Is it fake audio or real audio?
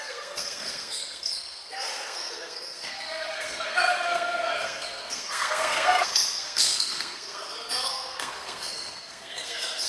fake